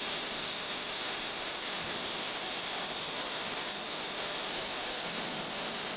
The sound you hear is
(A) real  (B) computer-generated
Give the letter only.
A